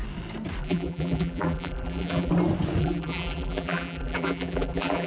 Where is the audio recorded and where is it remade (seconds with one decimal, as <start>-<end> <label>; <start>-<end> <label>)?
0.0-0.6 recorded; 0.6-2.3 remade; 2.3-2.8 recorded; 2.8-5.1 remade